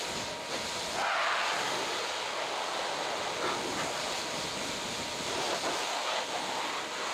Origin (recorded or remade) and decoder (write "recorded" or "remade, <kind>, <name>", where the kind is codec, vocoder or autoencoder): recorded